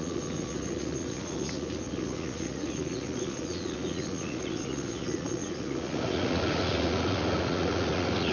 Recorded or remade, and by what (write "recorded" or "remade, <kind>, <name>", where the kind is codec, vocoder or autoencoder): remade, vocoder, Vocos